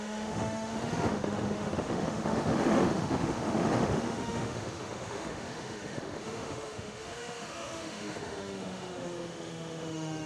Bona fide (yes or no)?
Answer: no